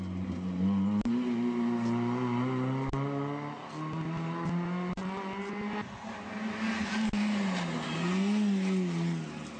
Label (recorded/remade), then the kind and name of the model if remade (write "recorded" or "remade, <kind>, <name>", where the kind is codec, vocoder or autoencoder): recorded